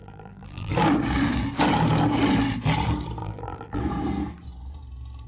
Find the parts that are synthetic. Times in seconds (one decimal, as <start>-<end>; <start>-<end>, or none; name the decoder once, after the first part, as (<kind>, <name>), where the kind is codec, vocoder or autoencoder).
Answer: 0.0-0.7 (vocoder, BigVGAN v2); 3.2-3.8